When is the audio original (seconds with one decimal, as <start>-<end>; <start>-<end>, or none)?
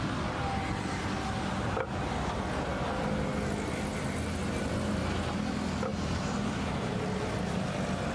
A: 0.0-5.9; 7.0-8.1